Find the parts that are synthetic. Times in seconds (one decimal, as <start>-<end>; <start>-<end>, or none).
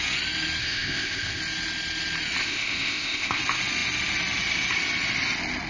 0.6-1.4; 2.4-3.4